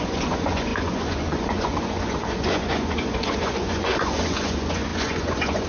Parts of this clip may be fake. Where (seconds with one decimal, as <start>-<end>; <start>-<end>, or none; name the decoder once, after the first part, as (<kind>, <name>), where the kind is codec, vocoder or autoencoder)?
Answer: 0.0-5.7 (vocoder, Vocos)